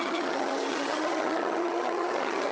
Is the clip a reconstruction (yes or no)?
yes